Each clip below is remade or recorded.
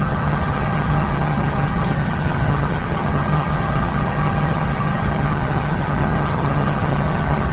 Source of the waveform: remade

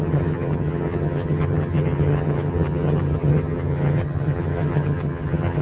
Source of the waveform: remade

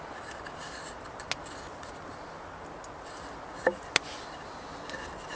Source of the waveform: recorded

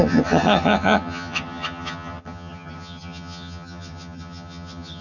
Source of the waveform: remade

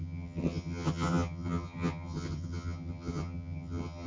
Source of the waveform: remade